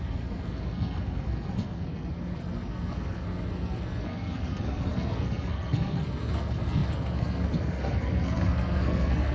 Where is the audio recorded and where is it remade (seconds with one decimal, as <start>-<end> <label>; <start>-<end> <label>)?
0.0-9.3 remade